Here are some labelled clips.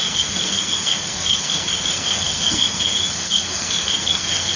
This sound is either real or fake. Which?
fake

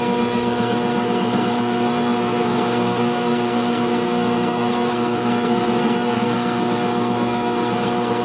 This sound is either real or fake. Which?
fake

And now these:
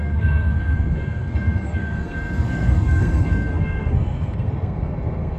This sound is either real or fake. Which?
fake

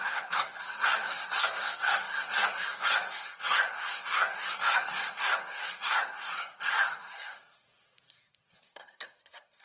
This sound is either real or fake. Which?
fake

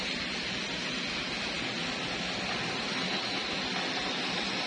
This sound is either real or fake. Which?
real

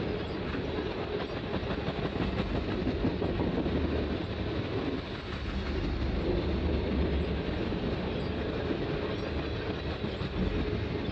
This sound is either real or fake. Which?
real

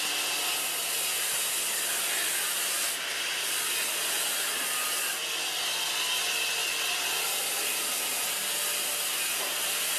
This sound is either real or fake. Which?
real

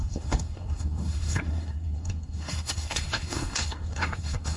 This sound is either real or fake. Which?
fake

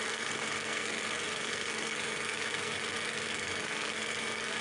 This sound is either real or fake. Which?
fake